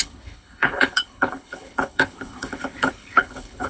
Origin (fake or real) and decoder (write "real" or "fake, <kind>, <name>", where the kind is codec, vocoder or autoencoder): fake, codec, HILCodec